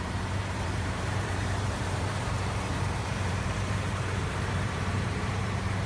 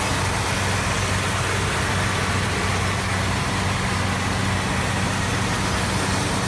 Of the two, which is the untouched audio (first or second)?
second